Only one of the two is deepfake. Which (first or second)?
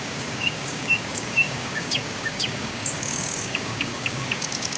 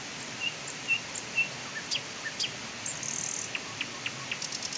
first